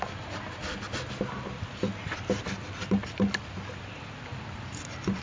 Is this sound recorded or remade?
recorded